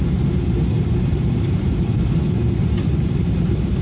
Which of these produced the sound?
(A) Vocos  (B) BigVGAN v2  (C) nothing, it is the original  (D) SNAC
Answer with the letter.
B